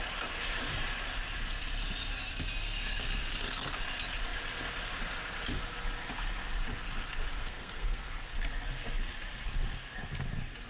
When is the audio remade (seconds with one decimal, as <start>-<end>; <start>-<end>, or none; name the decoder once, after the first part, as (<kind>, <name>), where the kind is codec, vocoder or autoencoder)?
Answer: 2.6-3.2 (codec, SNAC); 7.4-8.3